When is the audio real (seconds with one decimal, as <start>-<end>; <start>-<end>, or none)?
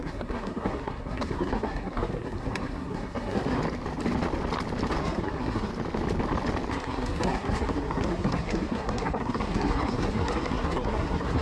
3.6-5.0; 5.7-6.7